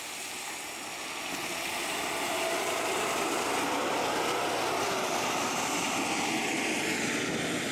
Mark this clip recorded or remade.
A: recorded